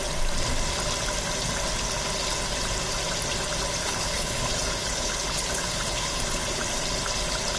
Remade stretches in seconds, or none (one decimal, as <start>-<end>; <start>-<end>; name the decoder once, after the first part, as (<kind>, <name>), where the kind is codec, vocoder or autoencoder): 3.8-6.6 (codec, HILCodec)